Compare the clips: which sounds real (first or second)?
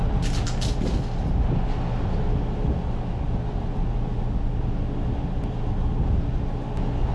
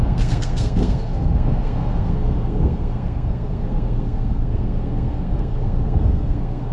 first